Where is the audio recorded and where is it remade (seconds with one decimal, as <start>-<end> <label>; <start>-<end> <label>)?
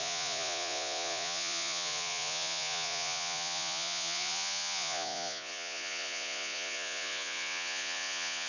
0.0-8.5 remade